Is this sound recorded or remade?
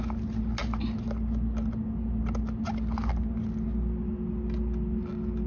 recorded